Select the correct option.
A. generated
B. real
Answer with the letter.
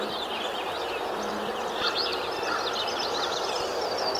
B